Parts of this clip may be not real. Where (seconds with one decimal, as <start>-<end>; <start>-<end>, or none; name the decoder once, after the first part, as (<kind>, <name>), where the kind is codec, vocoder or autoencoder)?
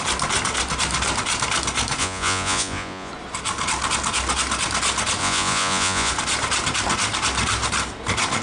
2.0-3.1 (vocoder, Vocos); 5.2-6.1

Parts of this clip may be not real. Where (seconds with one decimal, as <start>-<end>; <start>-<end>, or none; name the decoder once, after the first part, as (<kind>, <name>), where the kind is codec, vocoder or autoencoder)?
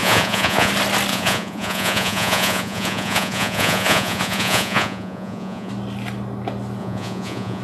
0.0-0.7 (vocoder, Vocos); 1.1-5.7; 6.8-7.6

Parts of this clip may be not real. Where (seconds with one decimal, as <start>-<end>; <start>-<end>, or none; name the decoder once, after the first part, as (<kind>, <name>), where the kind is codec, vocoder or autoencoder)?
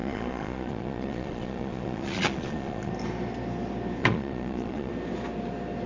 0.0-2.9 (vocoder, Vocos); 4.0-4.9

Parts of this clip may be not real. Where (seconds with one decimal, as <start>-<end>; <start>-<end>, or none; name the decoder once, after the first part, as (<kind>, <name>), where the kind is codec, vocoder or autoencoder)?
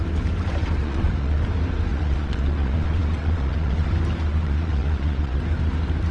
0.8-1.4 (vocoder, Vocos); 1.9-3.9; 4.3-5.4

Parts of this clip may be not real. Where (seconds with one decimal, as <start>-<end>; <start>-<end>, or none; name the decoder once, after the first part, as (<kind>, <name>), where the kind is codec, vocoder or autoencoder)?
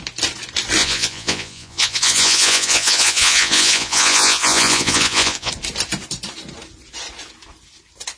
0.8-5.5 (vocoder, Vocos)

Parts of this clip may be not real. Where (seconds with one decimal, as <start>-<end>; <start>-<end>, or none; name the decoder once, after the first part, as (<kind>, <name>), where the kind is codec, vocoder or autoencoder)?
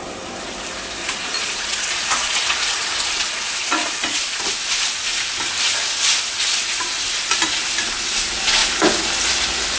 1.0-4.5 (vocoder, Vocos)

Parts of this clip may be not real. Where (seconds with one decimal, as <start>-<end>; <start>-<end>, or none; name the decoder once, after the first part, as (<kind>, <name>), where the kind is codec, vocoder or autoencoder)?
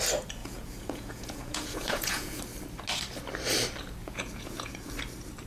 0.4-2.4 (vocoder, Vocos); 4.0-4.9